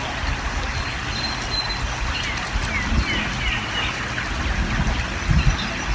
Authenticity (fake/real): real